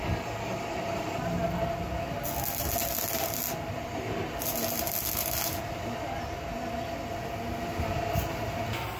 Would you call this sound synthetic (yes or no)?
no